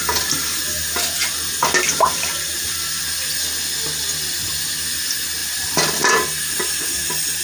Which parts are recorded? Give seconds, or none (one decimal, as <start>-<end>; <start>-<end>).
0.0-5.4; 6.8-7.4